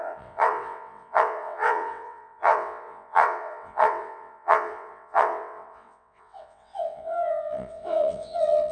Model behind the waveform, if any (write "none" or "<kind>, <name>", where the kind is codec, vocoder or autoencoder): vocoder, WaveNeXt